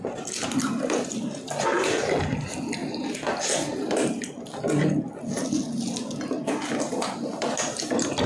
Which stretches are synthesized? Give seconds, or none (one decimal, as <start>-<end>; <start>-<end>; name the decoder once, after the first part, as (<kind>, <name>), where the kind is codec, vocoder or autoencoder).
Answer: none